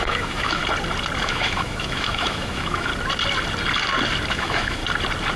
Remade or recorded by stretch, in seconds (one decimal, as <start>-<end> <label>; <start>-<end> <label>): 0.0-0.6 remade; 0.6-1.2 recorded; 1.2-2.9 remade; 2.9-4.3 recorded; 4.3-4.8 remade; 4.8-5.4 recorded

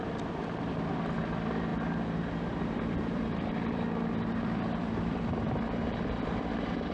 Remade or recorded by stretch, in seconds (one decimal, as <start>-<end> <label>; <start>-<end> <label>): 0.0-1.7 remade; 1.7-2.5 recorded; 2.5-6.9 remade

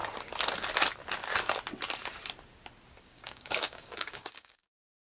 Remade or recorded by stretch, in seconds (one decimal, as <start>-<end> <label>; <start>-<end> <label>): 0.0-3.0 recorded; 3.0-5.0 remade

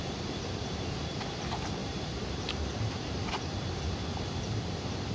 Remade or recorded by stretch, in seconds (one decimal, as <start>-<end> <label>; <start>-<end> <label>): 0.0-1.1 remade; 1.1-1.8 recorded; 1.8-3.8 remade; 3.8-5.1 recorded